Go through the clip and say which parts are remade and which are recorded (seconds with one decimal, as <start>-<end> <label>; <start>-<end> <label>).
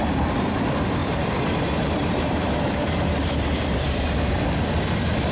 0.0-1.0 recorded; 1.0-4.2 remade; 4.2-5.3 recorded